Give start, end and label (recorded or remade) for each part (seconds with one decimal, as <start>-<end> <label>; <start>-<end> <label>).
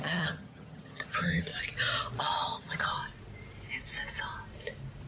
0.0-1.5 remade; 1.5-2.2 recorded; 2.2-2.9 remade; 2.9-5.1 recorded